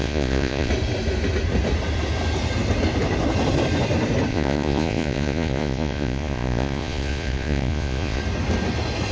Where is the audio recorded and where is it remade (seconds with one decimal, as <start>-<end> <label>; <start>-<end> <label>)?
0.0-0.7 remade; 0.7-4.3 recorded; 4.3-8.2 remade; 8.2-9.1 recorded

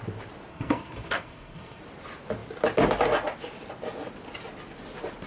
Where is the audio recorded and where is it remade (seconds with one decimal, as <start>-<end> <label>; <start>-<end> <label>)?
0.0-0.5 recorded; 0.5-1.8 remade; 1.8-5.3 recorded

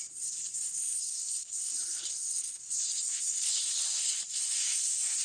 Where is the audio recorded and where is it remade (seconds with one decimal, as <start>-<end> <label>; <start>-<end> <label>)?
0.0-1.1 recorded; 1.1-4.2 remade; 4.2-5.2 recorded

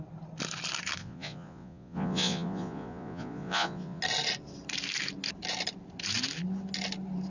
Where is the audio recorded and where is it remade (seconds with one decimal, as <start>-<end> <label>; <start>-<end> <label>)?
0.0-1.0 recorded; 1.0-4.0 remade; 4.0-7.3 recorded

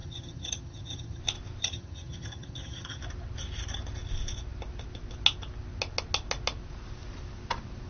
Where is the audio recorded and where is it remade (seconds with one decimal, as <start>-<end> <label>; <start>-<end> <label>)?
0.0-1.2 remade; 1.2-1.6 recorded; 1.6-3.0 remade; 3.0-7.9 recorded

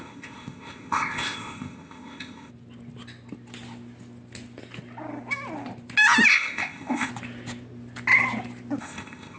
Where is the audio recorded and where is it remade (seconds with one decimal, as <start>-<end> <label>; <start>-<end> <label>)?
0.0-2.5 remade; 2.5-6.3 recorded; 6.3-7.1 remade; 7.1-8.8 recorded; 8.8-9.4 remade

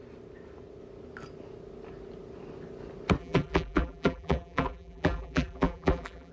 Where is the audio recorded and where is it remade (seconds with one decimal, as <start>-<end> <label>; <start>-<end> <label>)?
0.0-3.2 recorded; 3.2-6.3 remade